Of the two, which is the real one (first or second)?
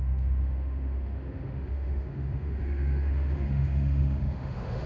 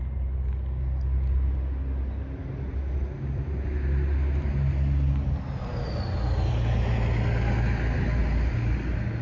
second